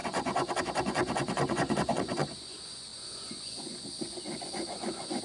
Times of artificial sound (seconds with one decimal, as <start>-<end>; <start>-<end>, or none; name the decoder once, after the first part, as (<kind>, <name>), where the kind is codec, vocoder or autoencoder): 0.0-5.2 (vocoder, Vocos)